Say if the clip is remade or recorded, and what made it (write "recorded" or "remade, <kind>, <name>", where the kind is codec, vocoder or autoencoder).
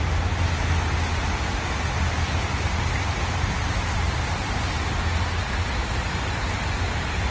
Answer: recorded